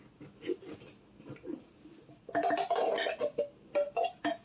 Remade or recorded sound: recorded